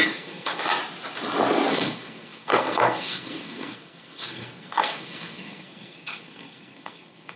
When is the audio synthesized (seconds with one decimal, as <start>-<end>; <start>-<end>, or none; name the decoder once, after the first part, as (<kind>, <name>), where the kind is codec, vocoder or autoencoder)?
0.0-0.8 (codec, SNAC); 1.7-7.4